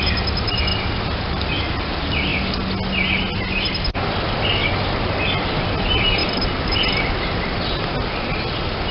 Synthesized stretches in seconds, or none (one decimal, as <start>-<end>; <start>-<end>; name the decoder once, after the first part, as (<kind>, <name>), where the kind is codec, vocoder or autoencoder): none